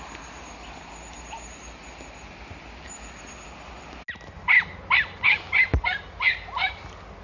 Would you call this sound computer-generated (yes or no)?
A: no